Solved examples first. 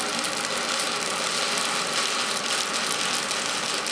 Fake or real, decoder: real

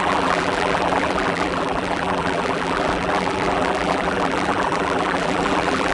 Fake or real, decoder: fake, vocoder, BigVGAN v2